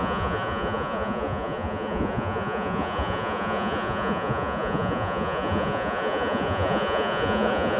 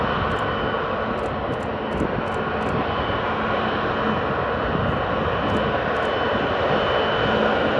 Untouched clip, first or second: second